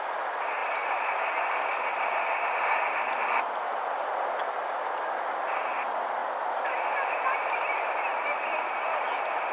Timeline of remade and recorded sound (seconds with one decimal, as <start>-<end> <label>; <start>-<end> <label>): 0.0-9.5 recorded